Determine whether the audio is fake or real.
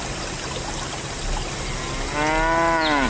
real